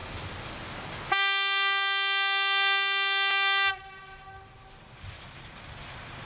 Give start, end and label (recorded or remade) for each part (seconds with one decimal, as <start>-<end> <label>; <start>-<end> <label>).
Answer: 0.0-6.3 recorded